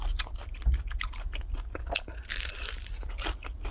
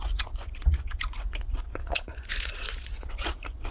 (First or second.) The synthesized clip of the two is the second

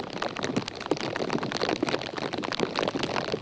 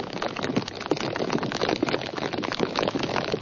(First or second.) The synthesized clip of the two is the second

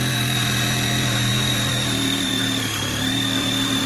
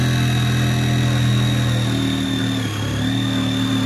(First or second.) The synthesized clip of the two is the first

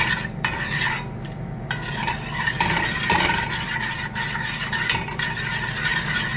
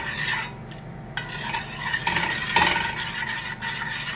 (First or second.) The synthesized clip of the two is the first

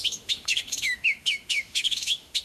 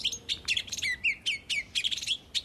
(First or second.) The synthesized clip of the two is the first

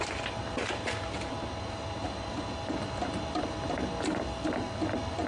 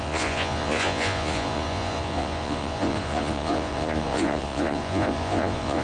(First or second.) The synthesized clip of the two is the second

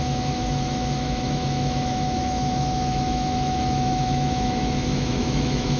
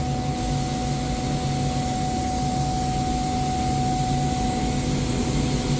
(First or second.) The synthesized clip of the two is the first